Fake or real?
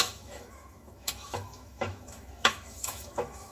fake